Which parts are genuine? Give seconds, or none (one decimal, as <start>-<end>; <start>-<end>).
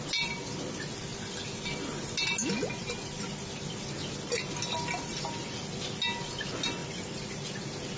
0.0-8.0